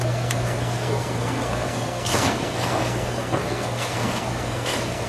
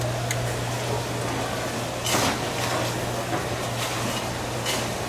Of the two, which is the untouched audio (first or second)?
second